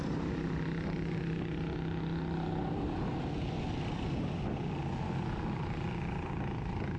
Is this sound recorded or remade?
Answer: recorded